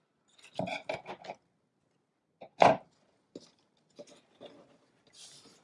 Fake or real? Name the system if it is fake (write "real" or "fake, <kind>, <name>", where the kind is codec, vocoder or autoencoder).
real